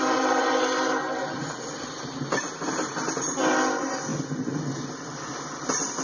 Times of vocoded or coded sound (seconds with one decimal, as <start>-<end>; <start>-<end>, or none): 0.0-4.1; 5.3-6.0